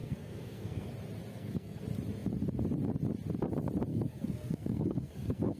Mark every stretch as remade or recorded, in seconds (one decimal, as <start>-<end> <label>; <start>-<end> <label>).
0.0-0.9 remade; 0.9-1.3 recorded; 1.3-1.8 remade; 1.8-3.9 recorded; 3.9-5.6 remade